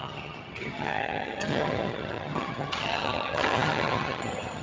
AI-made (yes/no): yes